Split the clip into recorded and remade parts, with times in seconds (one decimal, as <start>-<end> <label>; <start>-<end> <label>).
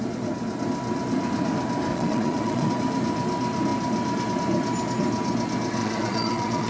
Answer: 0.0-1.9 recorded; 1.9-2.7 remade; 2.7-5.8 recorded; 5.8-6.7 remade